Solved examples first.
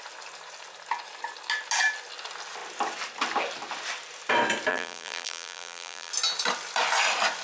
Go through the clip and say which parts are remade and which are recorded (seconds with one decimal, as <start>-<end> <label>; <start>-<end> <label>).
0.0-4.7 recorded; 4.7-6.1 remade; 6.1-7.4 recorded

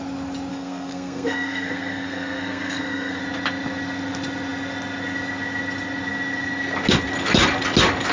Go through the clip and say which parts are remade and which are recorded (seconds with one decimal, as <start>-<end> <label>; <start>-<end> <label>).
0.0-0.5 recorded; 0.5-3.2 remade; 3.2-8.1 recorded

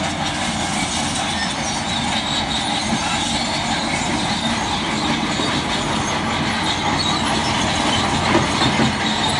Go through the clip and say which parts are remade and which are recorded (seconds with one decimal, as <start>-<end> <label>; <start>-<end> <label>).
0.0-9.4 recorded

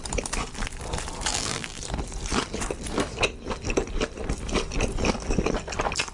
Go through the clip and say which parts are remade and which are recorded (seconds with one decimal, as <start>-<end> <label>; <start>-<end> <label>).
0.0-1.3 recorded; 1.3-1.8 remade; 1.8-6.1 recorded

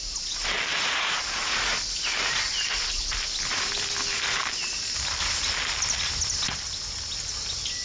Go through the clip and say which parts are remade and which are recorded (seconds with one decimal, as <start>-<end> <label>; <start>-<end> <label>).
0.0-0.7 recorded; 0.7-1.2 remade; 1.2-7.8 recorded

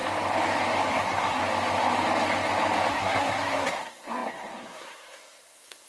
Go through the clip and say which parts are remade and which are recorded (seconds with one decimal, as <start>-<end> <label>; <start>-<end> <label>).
0.0-0.9 recorded; 0.9-1.4 remade; 1.4-2.9 recorded; 2.9-5.9 remade

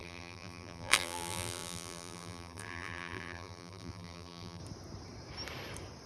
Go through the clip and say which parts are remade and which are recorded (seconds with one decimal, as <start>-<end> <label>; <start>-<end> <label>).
0.0-4.6 remade; 4.6-6.1 recorded